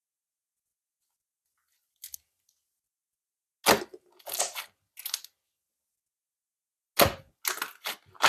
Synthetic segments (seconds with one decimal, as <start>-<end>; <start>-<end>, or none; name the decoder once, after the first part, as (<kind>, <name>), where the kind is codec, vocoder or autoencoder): none